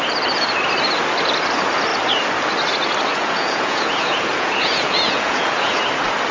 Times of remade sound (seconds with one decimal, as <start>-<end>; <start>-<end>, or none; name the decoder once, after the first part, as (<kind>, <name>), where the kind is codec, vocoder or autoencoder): 3.1-5.8 (vocoder, Vocos)